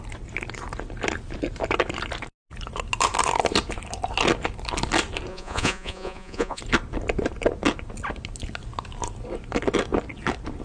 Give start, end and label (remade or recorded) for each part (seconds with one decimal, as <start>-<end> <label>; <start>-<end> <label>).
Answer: 0.0-5.3 recorded; 5.3-6.6 remade; 6.6-10.6 recorded

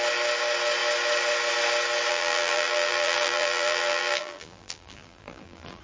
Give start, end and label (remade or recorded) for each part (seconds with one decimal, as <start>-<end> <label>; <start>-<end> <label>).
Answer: 0.0-2.1 recorded; 2.1-5.8 remade

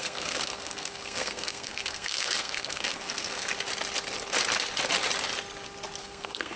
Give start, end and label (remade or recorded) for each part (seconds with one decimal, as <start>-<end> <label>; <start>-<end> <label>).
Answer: 0.0-3.5 remade; 3.5-6.0 recorded; 6.0-6.6 remade

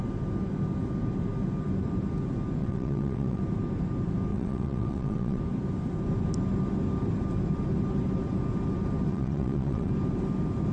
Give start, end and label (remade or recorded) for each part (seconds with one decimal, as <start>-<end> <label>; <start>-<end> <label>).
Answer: 0.0-2.6 recorded; 2.6-3.4 remade; 3.4-4.3 recorded; 4.3-5.4 remade; 5.4-9.1 recorded; 9.1-9.9 remade; 9.9-10.7 recorded